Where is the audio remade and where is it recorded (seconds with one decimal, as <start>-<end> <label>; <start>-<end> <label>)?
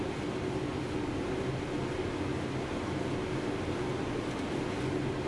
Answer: 0.0-5.3 recorded